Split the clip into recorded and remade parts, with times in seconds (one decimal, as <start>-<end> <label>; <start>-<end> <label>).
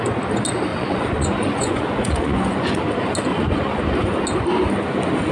0.0-0.7 recorded; 0.7-2.8 remade; 2.8-3.3 recorded; 3.3-3.8 remade; 3.8-5.3 recorded